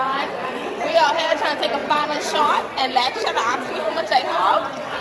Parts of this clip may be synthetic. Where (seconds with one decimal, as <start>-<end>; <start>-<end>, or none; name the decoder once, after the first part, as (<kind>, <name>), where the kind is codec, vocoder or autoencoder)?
0.0-5.0 (vocoder, WaveNeXt)